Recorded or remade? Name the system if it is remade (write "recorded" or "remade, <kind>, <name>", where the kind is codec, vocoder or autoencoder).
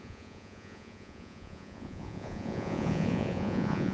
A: remade, vocoder, Vocos